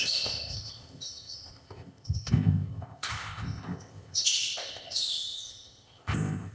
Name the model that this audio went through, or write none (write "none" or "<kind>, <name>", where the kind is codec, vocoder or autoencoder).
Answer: codec, ZipCodec